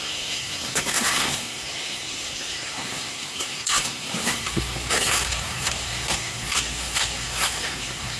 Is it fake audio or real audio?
fake